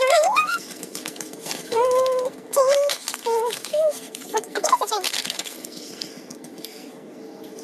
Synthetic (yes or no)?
yes